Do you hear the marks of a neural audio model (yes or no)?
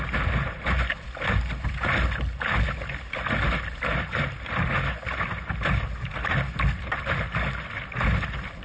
no